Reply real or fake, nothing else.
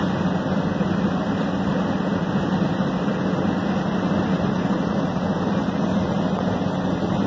real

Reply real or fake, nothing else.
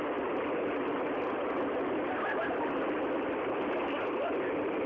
real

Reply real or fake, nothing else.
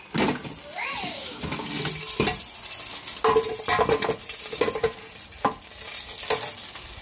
real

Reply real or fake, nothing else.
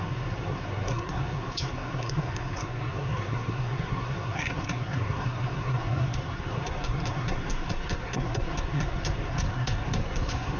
fake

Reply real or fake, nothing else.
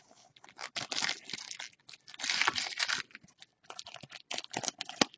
real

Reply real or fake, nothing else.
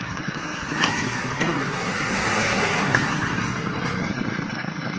fake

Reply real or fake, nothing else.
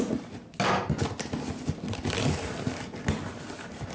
real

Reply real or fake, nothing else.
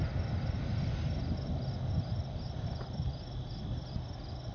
real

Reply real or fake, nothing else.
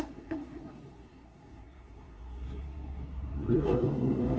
fake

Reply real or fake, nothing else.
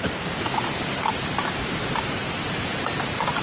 real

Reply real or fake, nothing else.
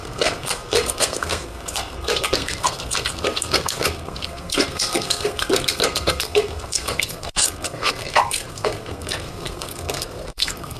fake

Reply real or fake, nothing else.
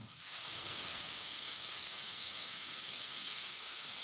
fake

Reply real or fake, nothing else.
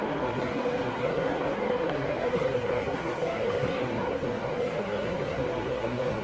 fake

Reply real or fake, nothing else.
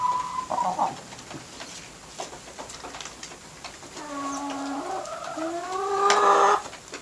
real